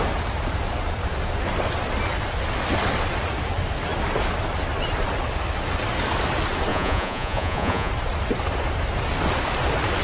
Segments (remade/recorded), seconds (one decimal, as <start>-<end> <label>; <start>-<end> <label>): 0.0-6.7 recorded; 6.7-7.9 remade; 7.9-10.0 recorded